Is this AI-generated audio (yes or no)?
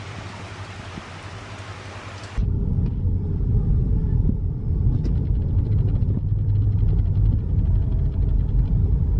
no